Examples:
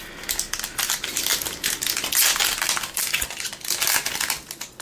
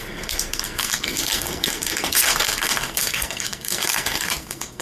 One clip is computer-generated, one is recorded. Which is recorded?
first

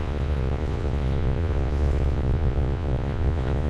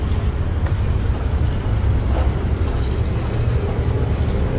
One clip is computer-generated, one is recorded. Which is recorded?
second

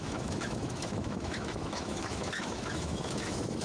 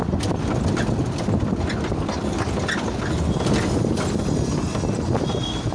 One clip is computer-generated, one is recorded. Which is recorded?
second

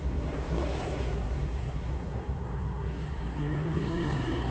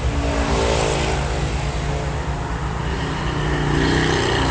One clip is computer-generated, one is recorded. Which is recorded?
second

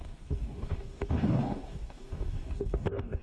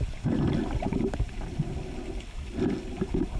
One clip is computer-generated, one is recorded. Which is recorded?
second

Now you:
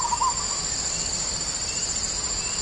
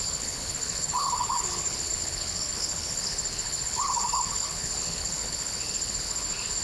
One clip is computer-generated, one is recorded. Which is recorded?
first